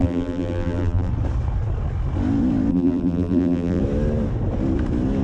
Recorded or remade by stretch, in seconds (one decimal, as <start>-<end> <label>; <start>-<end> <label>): 0.0-1.1 remade; 1.1-2.7 recorded; 2.7-3.8 remade; 3.8-5.2 recorded